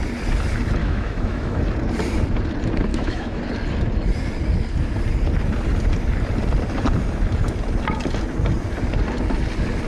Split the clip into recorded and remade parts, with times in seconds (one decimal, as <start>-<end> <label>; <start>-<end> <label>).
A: 0.0-0.8 recorded; 0.8-1.6 remade; 1.6-2.9 recorded; 2.9-3.4 remade; 3.4-9.9 recorded